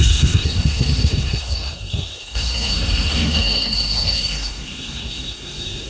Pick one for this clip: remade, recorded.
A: remade